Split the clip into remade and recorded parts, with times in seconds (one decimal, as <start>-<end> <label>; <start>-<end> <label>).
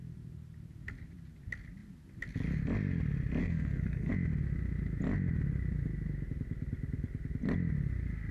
0.0-3.4 recorded; 3.4-4.1 remade; 4.1-8.3 recorded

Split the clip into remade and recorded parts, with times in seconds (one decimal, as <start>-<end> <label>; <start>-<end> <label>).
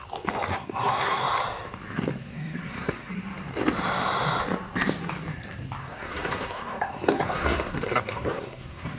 0.0-0.5 recorded; 0.5-1.2 remade; 1.2-2.2 recorded; 2.2-3.1 remade; 3.1-5.8 recorded; 5.8-9.0 remade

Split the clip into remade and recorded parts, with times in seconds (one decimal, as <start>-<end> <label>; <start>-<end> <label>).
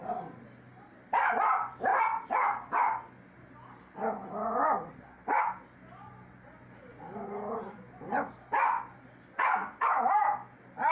0.0-10.9 recorded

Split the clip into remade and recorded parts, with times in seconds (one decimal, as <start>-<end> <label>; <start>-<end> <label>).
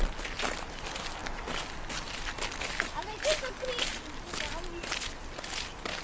0.0-6.0 recorded